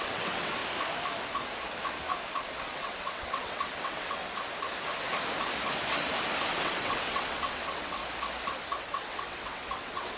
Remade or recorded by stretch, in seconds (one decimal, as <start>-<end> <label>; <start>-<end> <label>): 0.0-0.6 remade; 0.6-2.6 recorded; 2.6-4.2 remade; 4.2-6.5 recorded; 6.5-8.0 remade; 8.0-8.8 recorded; 8.8-10.2 remade